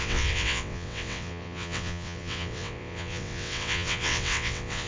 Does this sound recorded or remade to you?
remade